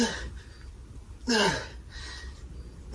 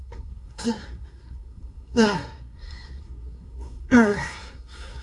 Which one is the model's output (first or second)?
second